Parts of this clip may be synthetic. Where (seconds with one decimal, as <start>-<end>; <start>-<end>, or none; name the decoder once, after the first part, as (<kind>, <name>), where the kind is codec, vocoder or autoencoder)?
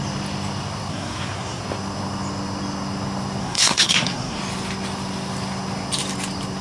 0.9-1.6 (codec, SNAC); 3.4-4.4